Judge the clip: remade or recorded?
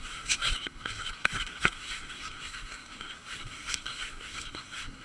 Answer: remade